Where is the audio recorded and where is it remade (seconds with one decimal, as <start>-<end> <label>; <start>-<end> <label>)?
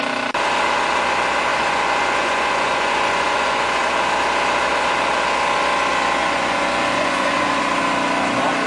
0.0-1.5 recorded; 1.5-3.8 remade; 3.8-6.2 recorded; 6.2-7.6 remade; 7.6-8.7 recorded